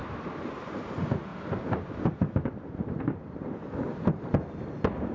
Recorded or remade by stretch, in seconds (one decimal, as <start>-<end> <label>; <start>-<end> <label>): 0.0-0.9 remade; 0.9-1.3 recorded; 1.3-4.4 remade; 4.4-5.1 recorded